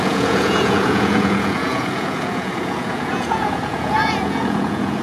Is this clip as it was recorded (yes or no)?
no